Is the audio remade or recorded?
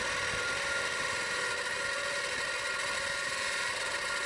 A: recorded